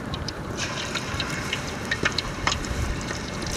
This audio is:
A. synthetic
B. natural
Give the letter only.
A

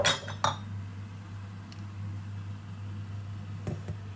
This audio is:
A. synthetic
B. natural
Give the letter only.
B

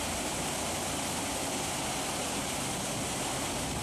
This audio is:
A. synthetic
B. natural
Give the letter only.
B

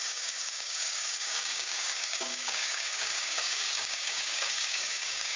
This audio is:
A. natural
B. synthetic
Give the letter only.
B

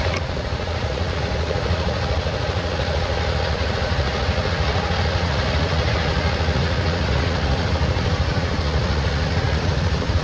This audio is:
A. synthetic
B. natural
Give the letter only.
A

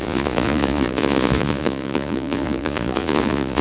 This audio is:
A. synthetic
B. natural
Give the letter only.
A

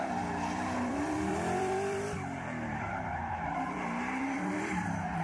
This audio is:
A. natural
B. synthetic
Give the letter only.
B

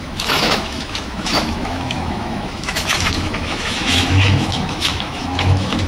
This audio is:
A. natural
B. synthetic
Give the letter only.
B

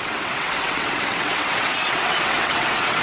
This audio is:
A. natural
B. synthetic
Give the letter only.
B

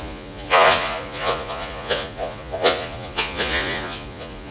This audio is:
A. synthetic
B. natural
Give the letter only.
A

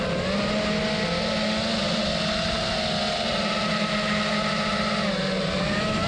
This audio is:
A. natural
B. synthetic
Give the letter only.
A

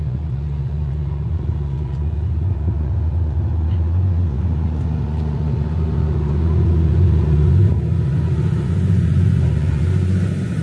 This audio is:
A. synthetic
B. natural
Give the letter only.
A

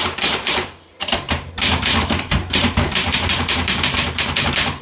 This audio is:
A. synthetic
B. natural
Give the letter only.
A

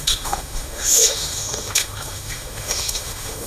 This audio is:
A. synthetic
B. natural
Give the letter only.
A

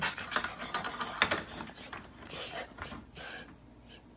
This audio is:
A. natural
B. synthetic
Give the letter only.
A